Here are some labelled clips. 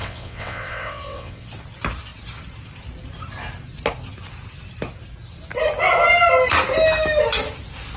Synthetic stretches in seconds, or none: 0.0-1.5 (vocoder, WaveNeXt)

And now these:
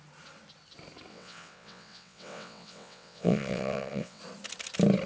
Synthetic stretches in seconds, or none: 1.1-4.2 (vocoder, WaveNeXt)

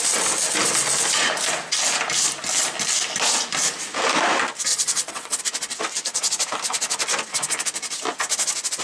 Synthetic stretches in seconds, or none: 4.7-5.4 (vocoder, WaveNeXt)

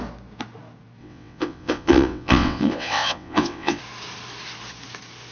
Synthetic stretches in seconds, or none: 1.0-3.8 (vocoder, WaveNeXt)

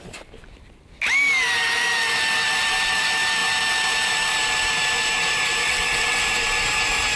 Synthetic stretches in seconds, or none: 5.6-6.2 (vocoder, WaveNeXt)

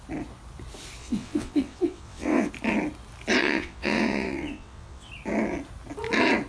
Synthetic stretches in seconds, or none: 1.0-2.5 (vocoder, WaveNeXt); 3.4-5.1